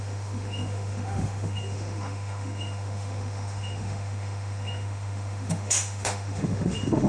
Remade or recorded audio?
remade